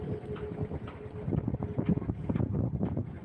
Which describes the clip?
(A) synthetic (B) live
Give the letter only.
B